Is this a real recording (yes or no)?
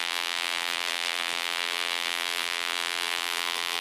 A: no